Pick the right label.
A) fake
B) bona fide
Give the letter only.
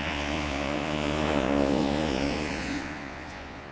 A